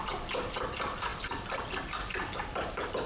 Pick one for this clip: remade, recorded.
recorded